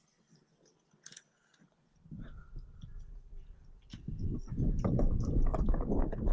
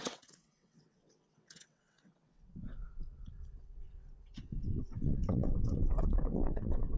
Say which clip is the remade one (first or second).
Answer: second